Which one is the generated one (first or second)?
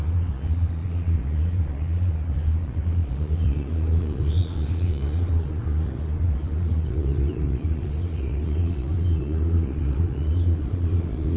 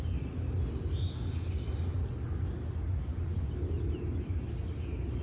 first